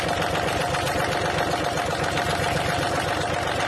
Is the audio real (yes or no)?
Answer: yes